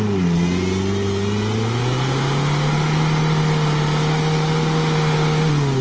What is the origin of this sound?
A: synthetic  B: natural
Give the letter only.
B